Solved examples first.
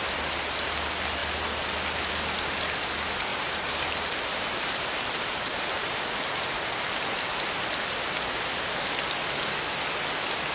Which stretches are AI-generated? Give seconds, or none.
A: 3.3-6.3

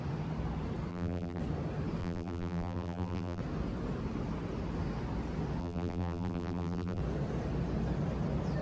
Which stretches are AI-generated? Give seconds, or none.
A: 0.9-1.4; 2.0-3.4; 5.6-7.0

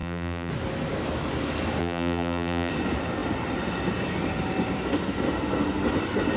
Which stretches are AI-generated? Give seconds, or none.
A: 0.0-0.5; 1.8-2.7